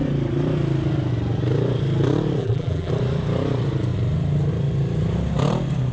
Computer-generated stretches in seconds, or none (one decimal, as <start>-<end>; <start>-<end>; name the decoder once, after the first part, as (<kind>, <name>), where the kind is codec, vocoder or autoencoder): 2.4-2.9 (vocoder, BigVGAN v2)